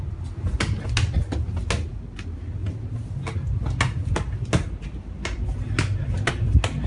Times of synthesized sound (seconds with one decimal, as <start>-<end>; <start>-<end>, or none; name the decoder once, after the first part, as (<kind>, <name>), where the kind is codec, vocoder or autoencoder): none